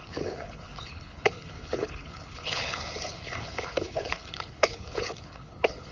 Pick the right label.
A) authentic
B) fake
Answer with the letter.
B